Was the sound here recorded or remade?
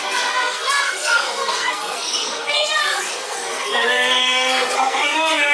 remade